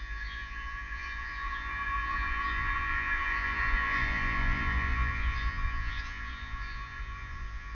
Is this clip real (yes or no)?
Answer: no